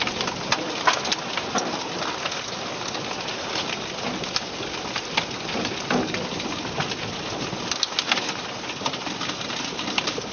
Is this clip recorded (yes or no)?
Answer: yes